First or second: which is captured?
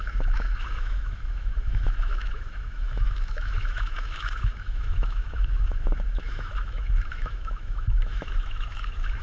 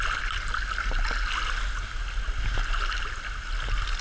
second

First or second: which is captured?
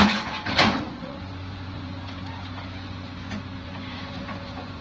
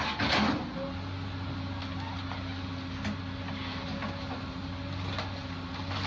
second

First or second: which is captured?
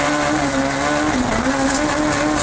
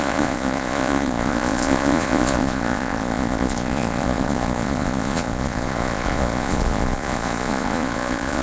first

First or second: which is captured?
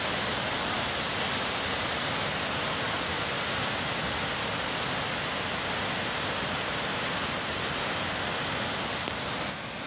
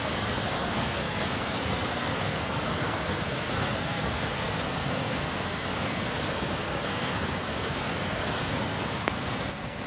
first